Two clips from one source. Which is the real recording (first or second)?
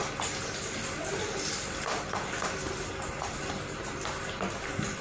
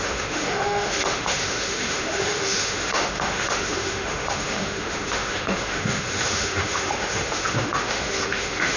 first